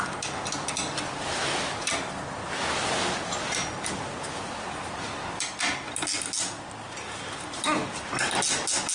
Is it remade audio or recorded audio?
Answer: recorded